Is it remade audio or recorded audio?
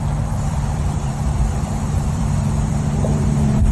remade